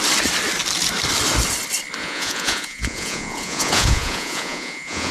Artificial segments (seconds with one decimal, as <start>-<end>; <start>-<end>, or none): 2.0-5.1

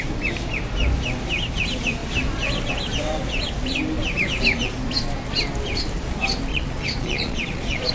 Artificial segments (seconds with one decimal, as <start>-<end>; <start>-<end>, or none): 6.5-7.9

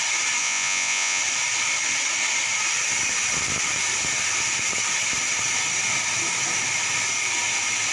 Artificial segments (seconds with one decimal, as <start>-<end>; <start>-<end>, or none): 0.4-1.2